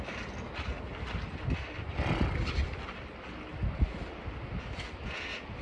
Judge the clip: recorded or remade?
recorded